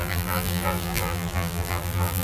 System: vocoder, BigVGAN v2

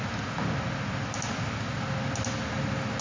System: none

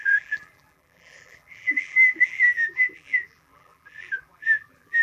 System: vocoder, BigVGAN v2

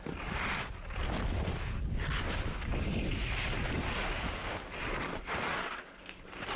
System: none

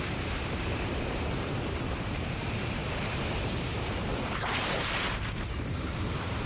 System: vocoder, BigVGAN v2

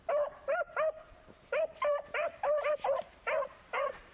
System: vocoder, BigVGAN v2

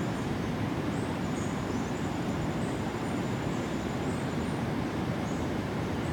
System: vocoder, BigVGAN v2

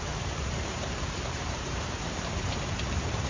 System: vocoder, BigVGAN v2